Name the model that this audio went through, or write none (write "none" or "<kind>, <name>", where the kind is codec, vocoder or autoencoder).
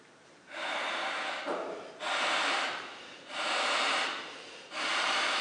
vocoder, BigVGAN v2